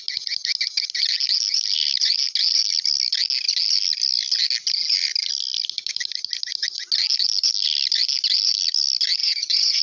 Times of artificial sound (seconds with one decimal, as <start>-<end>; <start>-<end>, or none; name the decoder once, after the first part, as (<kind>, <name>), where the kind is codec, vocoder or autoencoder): 9.2-9.8 (vocoder, Vocos)